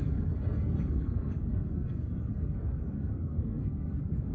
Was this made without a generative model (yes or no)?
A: no